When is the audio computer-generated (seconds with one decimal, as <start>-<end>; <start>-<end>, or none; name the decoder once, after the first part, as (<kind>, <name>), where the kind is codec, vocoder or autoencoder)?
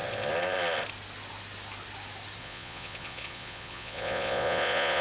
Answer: 2.4-5.0 (vocoder, Vocos)